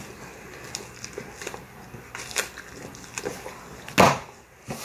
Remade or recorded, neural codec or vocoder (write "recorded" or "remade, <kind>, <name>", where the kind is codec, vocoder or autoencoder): recorded